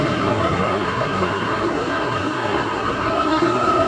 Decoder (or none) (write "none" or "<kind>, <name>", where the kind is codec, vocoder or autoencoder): codec, SNAC